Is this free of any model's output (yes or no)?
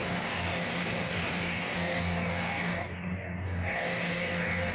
no